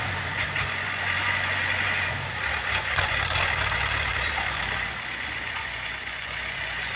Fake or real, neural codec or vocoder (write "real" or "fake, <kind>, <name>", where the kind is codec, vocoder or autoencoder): fake, vocoder, Vocos